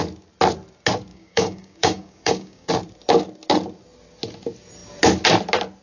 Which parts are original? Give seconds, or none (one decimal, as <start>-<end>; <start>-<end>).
0.0-1.1; 2.7-5.8